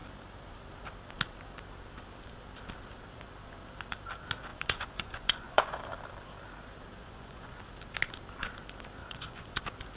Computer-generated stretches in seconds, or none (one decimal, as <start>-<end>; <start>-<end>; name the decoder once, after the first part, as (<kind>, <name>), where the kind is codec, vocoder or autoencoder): 4.5-5.8 (vocoder, Vocos); 7.0-7.6; 9.0-9.6